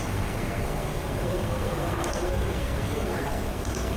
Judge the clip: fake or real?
fake